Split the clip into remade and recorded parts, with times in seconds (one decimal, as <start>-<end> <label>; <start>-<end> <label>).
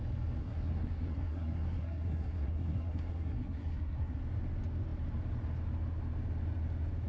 0.0-0.4 recorded; 0.4-4.2 remade; 4.2-7.1 recorded